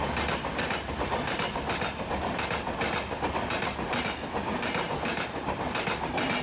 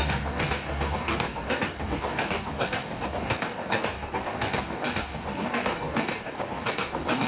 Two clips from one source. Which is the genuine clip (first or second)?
first